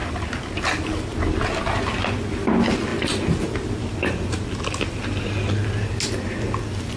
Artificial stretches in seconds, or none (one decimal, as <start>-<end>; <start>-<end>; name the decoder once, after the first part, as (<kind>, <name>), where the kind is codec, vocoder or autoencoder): none